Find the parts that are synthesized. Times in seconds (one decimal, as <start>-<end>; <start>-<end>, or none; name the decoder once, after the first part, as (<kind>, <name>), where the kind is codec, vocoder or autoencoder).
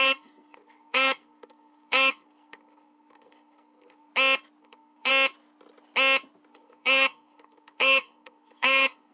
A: 0.0-4.1 (codec, SNAC); 4.6-5.1; 6.5-9.1